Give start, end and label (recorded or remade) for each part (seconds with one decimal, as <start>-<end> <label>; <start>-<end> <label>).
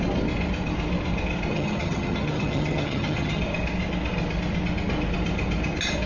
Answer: 0.0-1.5 recorded; 1.5-3.4 remade; 3.4-6.1 recorded